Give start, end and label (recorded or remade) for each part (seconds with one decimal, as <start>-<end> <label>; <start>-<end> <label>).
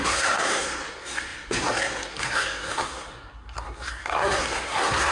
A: 0.0-5.1 remade